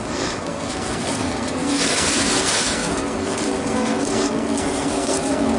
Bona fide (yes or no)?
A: no